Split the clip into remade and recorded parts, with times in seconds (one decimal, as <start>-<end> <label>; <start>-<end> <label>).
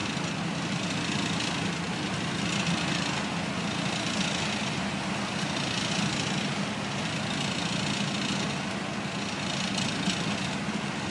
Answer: 0.0-11.1 recorded